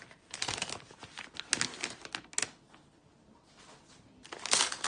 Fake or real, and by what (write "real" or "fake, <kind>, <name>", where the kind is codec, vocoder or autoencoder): real